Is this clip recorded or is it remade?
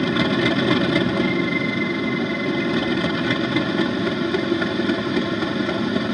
recorded